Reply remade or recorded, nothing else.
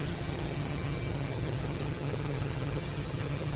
remade